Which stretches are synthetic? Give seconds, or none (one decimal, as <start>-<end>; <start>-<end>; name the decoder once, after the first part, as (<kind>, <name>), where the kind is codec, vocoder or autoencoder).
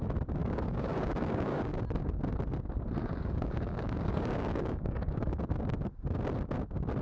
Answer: 0.4-1.8 (codec, DAC); 3.0-5.4